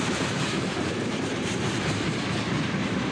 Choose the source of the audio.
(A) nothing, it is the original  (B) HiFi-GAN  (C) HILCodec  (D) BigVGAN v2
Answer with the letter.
D